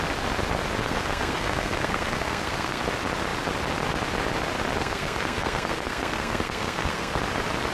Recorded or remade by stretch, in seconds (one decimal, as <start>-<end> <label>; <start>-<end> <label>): 0.0-0.8 recorded; 0.8-2.8 remade; 2.8-4.8 recorded; 4.8-7.2 remade; 7.2-7.7 recorded